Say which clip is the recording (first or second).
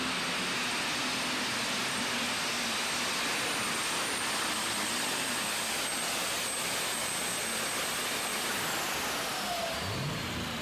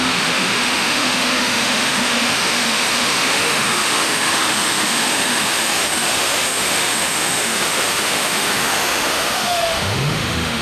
first